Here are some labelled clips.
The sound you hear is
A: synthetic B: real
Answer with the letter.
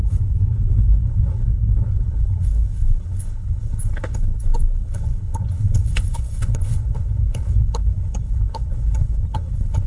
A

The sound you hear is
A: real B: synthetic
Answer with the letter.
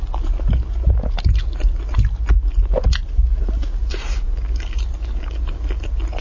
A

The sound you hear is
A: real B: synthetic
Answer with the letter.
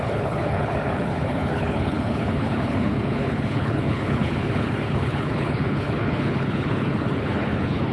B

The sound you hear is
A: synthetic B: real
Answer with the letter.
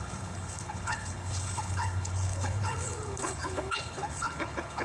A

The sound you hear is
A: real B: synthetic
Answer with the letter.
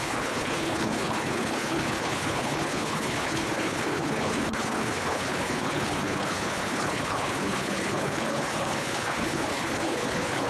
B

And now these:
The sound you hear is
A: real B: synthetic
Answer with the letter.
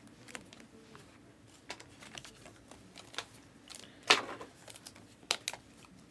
A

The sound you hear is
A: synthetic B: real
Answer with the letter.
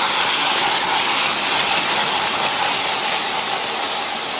B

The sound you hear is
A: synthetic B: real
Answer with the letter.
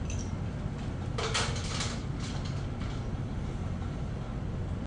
B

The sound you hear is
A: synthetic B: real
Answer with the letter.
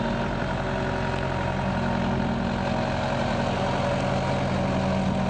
B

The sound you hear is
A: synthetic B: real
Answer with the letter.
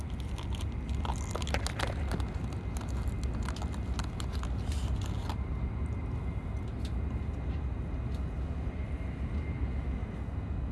B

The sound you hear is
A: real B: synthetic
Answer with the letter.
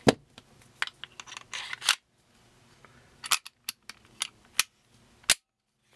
A